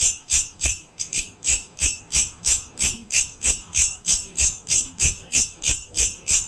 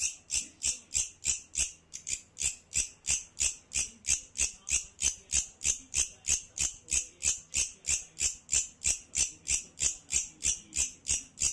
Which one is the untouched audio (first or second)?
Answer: second